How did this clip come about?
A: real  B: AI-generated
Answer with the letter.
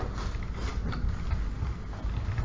A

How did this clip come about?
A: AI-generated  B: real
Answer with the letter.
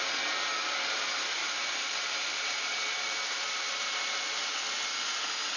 B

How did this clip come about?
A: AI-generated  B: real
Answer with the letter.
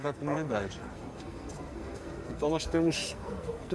A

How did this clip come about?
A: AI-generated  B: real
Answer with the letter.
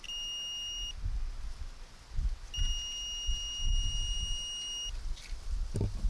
B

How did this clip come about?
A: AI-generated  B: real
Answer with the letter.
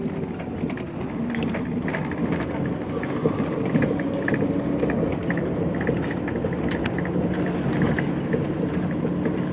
B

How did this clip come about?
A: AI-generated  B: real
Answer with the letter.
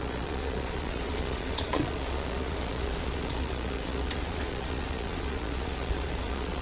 A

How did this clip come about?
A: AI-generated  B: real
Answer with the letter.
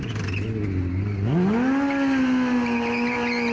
B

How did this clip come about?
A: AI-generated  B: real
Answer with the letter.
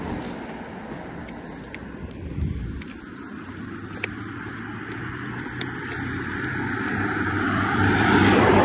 A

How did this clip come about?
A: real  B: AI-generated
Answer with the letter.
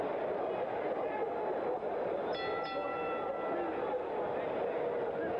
A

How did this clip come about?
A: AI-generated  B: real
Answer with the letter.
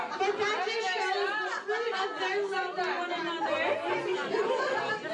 B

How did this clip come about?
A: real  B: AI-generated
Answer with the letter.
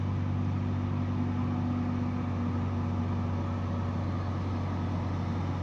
A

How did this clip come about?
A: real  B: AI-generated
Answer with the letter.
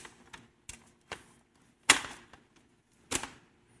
A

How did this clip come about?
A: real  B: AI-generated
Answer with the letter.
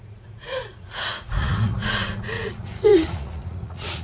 B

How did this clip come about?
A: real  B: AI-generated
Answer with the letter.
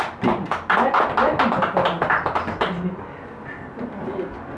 A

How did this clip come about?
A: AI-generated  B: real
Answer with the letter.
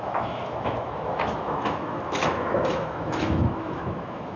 A